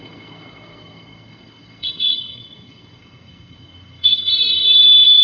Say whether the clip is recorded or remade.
remade